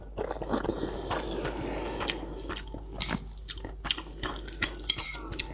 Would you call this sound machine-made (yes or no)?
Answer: no